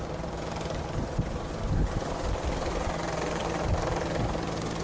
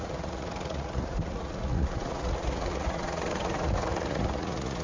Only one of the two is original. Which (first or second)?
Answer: first